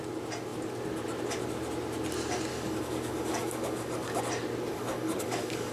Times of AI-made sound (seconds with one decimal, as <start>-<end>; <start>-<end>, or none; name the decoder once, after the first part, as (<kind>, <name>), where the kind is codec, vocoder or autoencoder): 2.5-4.2 (codec, DAC); 4.7-5.7